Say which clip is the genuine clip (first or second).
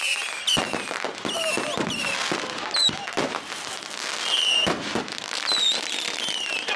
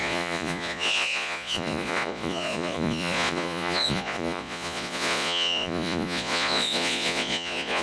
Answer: first